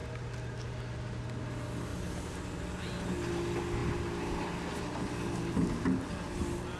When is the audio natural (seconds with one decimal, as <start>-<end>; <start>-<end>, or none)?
0.0-6.8